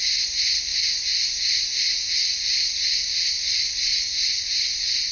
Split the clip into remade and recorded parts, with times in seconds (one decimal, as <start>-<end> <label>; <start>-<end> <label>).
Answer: 0.0-0.7 recorded; 0.7-3.3 remade; 3.3-3.9 recorded; 3.9-5.1 remade